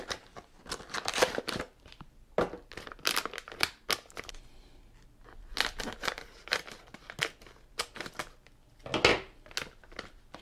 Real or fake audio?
real